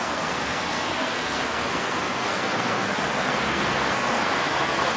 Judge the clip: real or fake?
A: fake